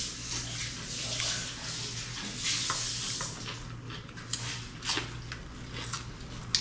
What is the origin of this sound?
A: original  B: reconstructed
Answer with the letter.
A